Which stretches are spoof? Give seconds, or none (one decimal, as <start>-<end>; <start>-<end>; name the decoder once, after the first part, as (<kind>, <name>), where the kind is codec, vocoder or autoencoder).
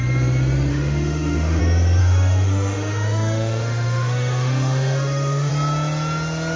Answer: 0.7-1.6 (autoencoder, DAC-VAE); 2.0-5.5